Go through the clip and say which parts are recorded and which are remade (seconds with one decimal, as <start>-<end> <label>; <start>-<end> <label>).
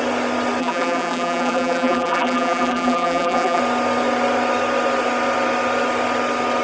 0.0-0.6 recorded; 0.6-3.6 remade; 3.6-6.6 recorded